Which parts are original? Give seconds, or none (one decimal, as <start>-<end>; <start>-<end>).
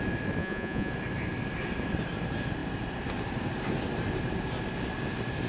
0.0-0.4; 0.9-5.5